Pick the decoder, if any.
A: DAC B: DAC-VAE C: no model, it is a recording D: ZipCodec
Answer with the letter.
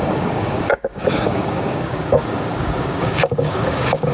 A